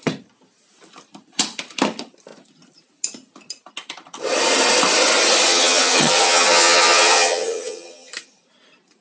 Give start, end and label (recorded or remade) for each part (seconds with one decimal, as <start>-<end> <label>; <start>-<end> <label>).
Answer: 0.0-5.5 recorded; 5.5-8.1 remade; 8.1-9.0 recorded